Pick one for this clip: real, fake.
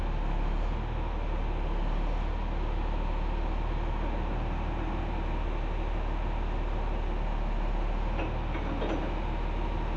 real